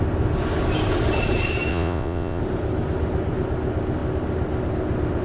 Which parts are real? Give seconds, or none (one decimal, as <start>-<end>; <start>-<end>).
0.0-1.7; 2.4-5.2